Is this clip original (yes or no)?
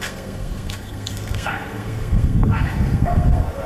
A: no